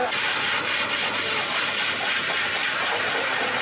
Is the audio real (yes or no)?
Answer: yes